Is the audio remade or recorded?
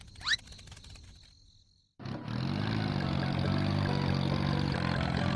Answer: recorded